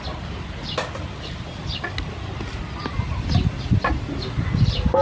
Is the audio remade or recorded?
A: recorded